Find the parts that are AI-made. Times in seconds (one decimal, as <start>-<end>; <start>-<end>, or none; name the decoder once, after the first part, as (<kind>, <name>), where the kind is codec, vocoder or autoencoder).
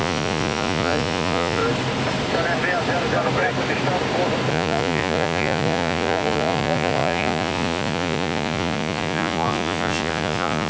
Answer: 0.0-1.6 (vocoder, Vocos); 4.5-10.7